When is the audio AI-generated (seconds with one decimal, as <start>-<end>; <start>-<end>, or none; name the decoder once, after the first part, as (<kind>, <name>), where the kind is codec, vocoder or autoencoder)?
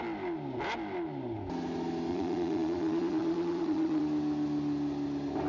2.1-4.0 (vocoder, Vocos)